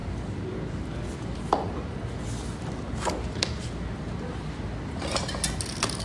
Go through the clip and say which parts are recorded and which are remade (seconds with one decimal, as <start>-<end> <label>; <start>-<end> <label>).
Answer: 0.0-6.0 recorded